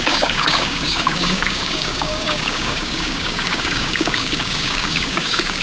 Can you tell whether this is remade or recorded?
remade